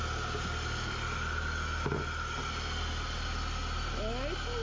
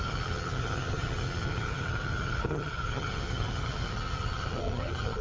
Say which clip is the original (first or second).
first